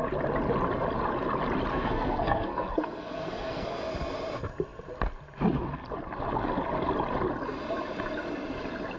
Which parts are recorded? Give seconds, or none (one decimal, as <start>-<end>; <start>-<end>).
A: 0.0-1.7; 3.8-9.0